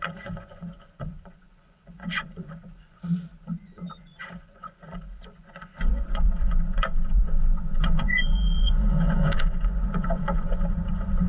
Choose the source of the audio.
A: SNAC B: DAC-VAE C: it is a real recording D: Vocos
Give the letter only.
D